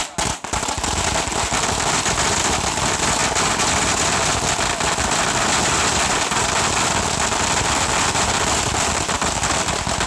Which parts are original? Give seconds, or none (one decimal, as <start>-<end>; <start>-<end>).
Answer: 0.0-10.1